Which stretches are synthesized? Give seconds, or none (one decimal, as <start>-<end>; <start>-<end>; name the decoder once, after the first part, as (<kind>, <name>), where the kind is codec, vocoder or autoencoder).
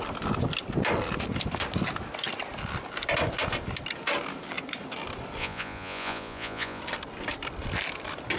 5.4-6.8 (vocoder, Vocos)